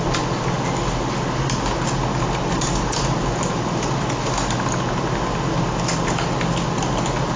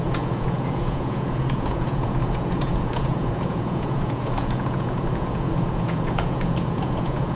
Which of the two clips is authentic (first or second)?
first